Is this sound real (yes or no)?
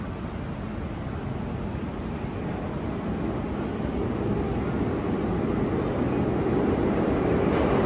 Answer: yes